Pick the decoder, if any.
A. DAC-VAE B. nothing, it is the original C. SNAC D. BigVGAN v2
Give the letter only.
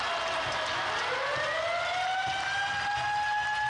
B